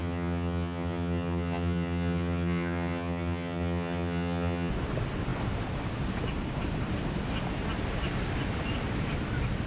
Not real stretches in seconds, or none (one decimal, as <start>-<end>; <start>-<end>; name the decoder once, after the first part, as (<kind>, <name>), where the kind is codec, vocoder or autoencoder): 0.0-4.7 (vocoder, HiFi-GAN)